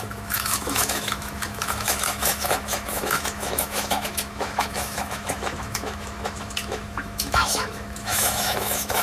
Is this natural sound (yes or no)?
no